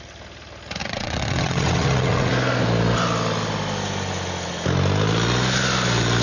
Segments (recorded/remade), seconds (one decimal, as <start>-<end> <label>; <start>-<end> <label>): 0.0-0.8 recorded; 0.8-2.3 remade; 2.3-6.2 recorded